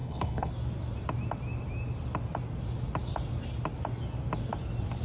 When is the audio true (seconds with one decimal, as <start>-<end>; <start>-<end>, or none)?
0.5-5.0